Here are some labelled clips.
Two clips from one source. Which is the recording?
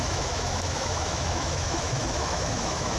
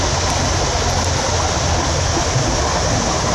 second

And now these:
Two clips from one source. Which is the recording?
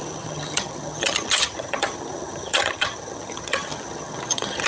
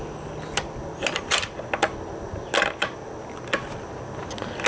second